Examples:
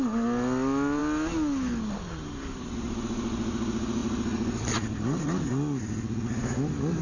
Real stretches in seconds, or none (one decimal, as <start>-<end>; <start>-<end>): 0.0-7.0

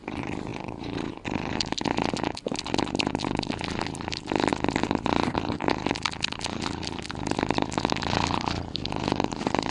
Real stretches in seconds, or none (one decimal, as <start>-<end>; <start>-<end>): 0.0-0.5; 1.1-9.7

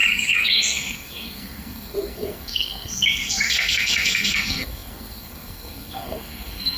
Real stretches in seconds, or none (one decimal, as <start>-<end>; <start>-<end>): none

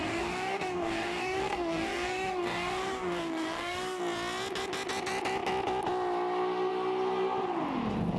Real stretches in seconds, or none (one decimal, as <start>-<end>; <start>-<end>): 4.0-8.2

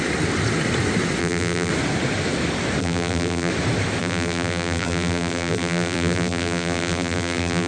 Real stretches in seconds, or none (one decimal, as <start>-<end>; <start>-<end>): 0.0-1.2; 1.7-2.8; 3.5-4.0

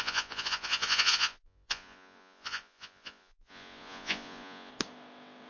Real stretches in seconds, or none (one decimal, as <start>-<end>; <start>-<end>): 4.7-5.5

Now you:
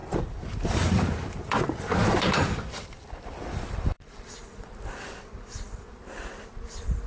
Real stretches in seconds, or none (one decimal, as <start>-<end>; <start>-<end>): 1.6-2.0; 6.0-7.1

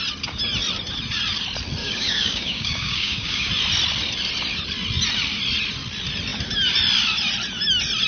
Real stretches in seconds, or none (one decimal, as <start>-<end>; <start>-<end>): 0.0-1.8; 3.5-8.1